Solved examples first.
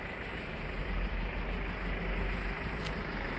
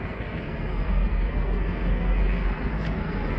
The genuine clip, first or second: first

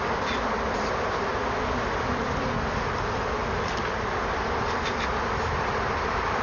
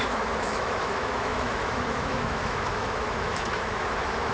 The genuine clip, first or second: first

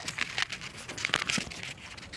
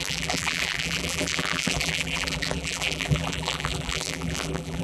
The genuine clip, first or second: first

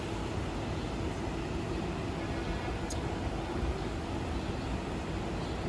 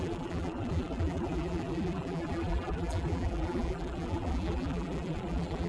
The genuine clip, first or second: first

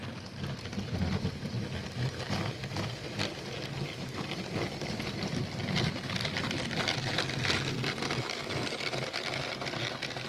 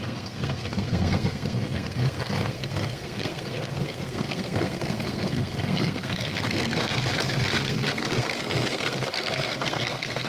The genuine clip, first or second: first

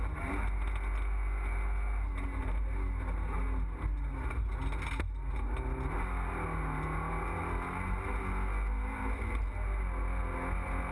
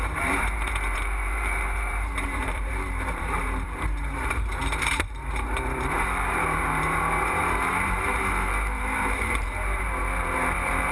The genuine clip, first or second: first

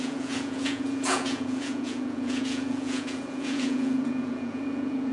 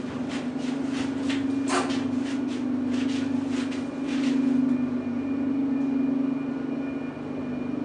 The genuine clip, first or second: second